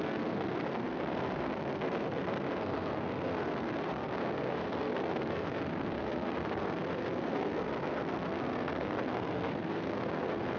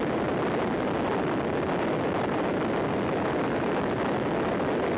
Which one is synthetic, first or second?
first